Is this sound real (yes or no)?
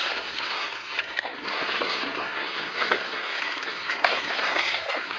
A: no